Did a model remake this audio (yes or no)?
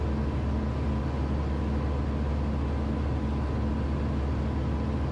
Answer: no